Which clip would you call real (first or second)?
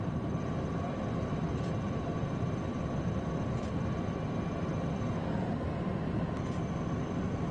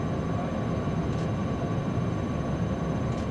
second